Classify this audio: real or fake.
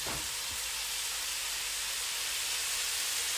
real